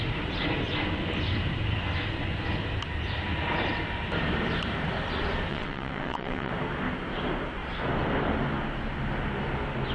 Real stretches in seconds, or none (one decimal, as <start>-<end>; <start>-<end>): 0.0-5.5; 6.5-9.9